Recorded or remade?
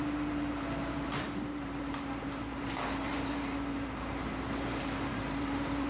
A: remade